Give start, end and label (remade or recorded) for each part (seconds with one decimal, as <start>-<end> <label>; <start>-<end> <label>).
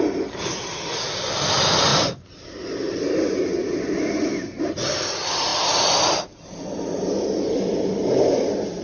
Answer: 0.0-1.9 recorded; 1.9-3.1 remade; 3.1-8.8 recorded